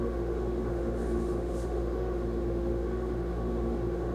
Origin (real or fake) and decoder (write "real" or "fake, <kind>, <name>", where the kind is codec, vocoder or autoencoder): fake, autoencoder, DAC-VAE